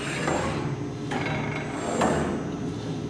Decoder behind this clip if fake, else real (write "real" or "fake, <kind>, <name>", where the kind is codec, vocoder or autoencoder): real